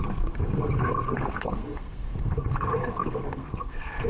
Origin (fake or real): fake